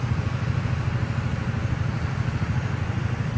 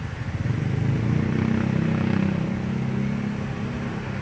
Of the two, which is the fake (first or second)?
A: first